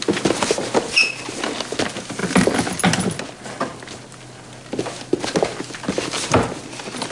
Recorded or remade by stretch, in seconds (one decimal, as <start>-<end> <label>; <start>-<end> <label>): 0.0-7.1 recorded